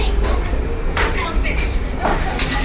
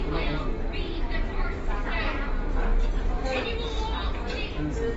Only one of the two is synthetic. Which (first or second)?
first